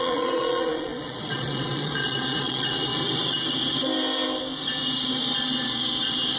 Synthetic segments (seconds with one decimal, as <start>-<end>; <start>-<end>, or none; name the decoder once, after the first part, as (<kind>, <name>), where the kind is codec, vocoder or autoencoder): 0.0-2.9 (vocoder, Vocos)